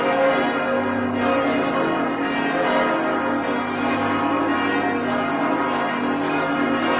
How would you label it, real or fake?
real